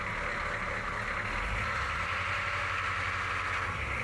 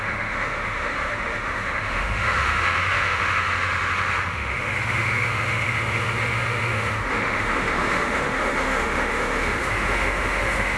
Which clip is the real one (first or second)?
first